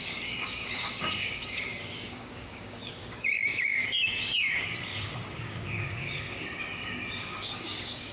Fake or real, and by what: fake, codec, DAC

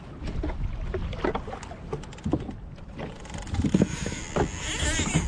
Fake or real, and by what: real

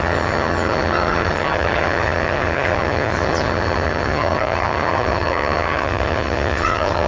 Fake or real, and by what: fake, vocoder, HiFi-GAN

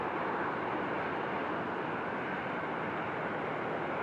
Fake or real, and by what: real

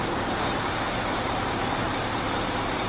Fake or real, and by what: fake, vocoder, BigVGAN v2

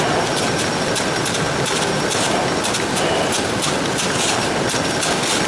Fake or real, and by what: real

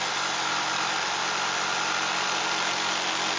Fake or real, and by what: real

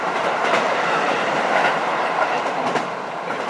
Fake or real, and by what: fake, vocoder, BigVGAN v2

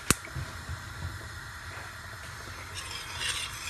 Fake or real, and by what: real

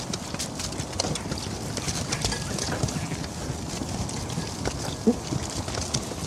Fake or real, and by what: real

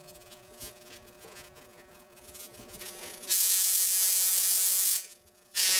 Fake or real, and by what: fake, vocoder, Vocos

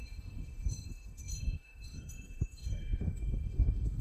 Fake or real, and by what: fake, autoencoder, DAC-VAE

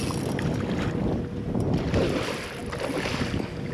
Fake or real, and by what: real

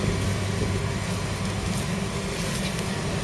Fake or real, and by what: real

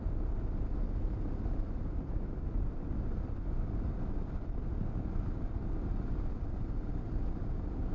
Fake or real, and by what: real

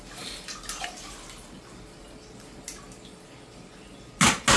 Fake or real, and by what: real